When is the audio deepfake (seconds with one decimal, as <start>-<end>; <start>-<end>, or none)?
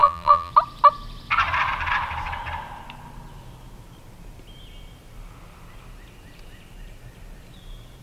0.0-0.5